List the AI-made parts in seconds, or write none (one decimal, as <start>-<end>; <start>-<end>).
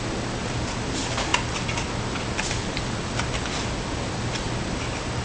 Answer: none